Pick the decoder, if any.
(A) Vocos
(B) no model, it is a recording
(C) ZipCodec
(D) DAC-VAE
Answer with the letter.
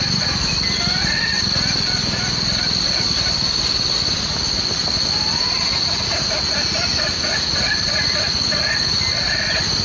B